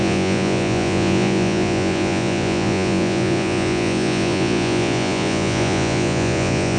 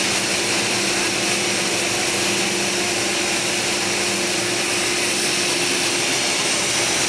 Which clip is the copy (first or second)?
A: first